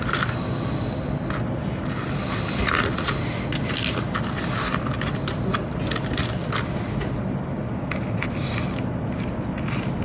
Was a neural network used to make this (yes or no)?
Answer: no